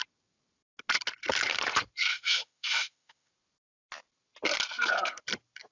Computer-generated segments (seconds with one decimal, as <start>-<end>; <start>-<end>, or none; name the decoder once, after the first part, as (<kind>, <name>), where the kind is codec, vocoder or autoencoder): 2.1-3.3 (autoencoder, DAC-VAE)